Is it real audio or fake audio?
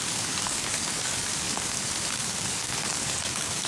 fake